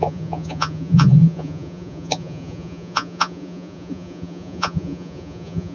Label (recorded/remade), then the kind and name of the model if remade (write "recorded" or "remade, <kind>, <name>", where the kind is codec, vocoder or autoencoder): remade, vocoder, Vocos